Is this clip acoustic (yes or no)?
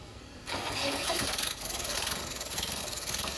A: no